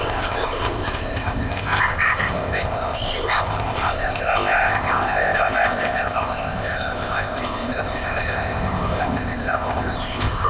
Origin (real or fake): fake